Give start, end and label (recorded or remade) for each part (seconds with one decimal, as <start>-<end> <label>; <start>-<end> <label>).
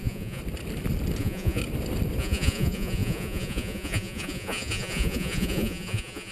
0.0-0.4 remade; 0.4-1.2 recorded; 1.2-1.6 remade; 1.6-2.2 recorded; 2.2-6.3 remade